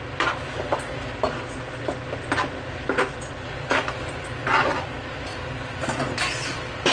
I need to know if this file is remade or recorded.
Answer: recorded